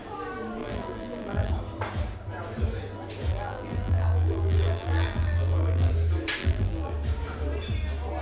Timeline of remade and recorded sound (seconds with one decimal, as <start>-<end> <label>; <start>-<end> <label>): 0.0-0.6 recorded; 0.6-1.5 remade; 1.5-3.3 recorded; 3.3-5.9 remade; 5.9-6.4 recorded; 6.4-6.9 remade; 6.9-8.2 recorded